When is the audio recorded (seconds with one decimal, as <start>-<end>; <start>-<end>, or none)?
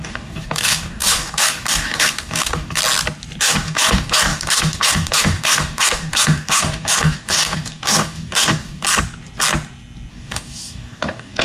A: 2.8-3.4; 8.8-10.1